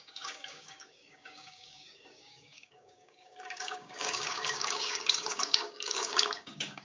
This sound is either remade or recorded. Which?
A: remade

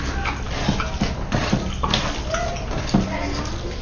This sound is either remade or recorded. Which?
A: recorded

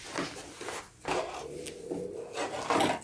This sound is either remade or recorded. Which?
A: recorded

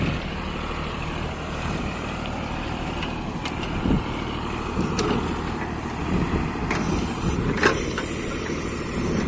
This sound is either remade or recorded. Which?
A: recorded